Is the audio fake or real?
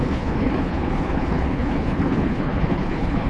fake